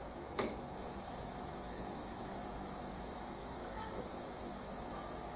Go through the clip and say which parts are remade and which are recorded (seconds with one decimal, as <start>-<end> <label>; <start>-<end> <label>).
0.0-5.4 remade